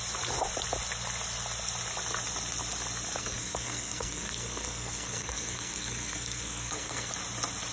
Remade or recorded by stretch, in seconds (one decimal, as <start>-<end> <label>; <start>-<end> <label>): 0.0-3.2 recorded; 3.2-7.1 remade; 7.1-7.7 recorded